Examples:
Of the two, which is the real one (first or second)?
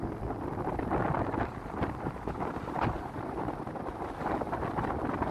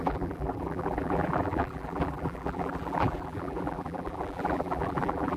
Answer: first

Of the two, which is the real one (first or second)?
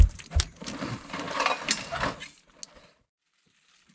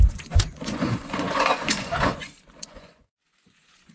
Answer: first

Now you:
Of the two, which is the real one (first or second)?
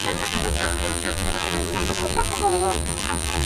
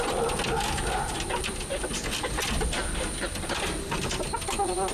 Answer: second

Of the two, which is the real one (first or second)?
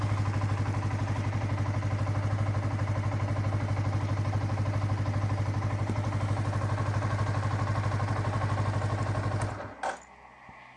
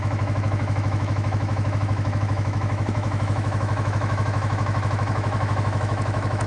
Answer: first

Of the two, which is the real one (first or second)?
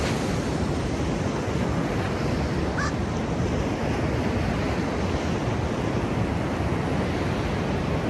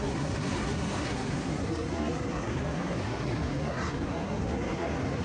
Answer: first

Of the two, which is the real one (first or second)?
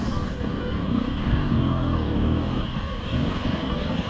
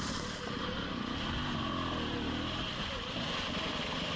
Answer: second